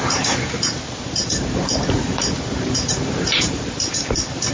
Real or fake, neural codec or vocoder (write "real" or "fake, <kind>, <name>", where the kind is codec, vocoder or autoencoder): fake, vocoder, BigVGAN v2